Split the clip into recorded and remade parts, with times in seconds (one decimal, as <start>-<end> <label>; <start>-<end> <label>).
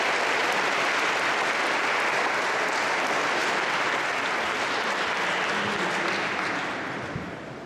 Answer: 0.0-6.7 recorded; 6.7-7.7 remade